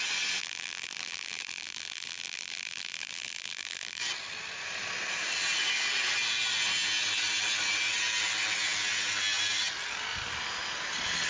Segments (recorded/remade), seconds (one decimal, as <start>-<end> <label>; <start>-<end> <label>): 0.0-0.4 recorded; 0.4-4.0 remade; 4.0-11.3 recorded